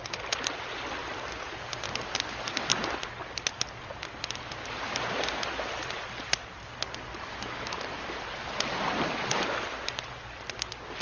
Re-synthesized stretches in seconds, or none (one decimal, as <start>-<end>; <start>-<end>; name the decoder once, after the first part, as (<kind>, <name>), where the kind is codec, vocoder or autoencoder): none